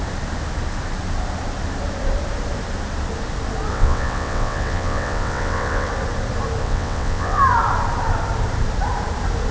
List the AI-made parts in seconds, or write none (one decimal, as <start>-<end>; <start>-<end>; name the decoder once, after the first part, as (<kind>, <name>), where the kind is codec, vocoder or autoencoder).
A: 3.7-5.9 (vocoder, WaveNeXt); 6.6-7.4